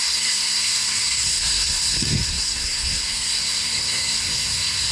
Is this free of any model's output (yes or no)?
no